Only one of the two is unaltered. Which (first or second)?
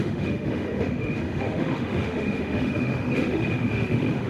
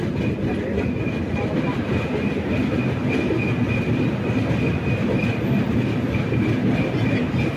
second